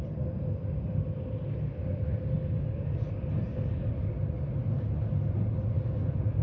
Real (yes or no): yes